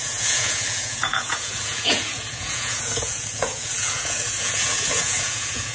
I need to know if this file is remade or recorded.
remade